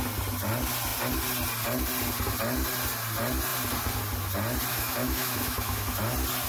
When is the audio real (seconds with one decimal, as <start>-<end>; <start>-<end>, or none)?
0.0-4.7; 6.0-6.5